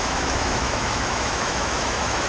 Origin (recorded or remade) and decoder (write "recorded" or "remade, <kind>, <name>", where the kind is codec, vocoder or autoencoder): remade, autoencoder, DAC-VAE